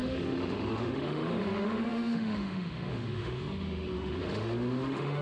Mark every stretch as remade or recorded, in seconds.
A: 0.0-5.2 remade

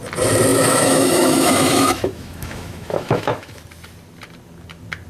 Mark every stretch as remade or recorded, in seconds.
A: 0.0-0.5 recorded; 0.5-3.6 remade; 3.6-5.1 recorded

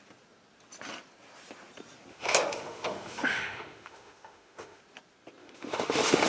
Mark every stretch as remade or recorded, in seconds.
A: 0.0-2.1 recorded; 2.1-4.8 remade; 4.8-5.4 recorded; 5.4-6.3 remade